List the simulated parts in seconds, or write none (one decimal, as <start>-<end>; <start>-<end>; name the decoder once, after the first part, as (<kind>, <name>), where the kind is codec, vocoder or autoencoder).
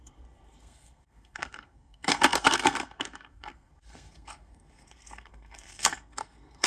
0.0-6.7 (codec, SNAC)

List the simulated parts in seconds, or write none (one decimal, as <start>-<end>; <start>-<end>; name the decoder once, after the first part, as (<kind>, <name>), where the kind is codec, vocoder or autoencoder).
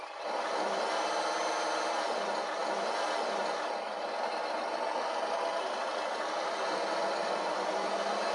none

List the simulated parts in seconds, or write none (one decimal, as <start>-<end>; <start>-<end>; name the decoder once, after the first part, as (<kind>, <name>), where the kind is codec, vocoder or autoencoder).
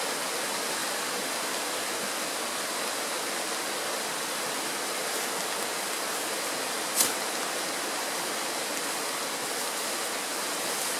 none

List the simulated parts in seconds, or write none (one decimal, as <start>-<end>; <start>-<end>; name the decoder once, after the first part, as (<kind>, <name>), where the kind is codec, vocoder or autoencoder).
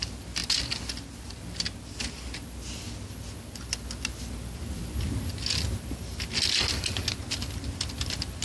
none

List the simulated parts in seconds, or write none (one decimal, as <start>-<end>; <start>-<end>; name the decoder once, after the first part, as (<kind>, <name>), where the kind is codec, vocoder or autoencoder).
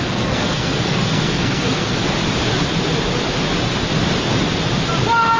0.0-2.0 (codec, SNAC)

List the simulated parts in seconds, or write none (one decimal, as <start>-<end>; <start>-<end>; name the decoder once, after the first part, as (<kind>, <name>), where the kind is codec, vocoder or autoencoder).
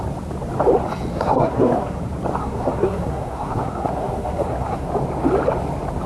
1.1-2.0 (codec, SNAC); 2.4-4.9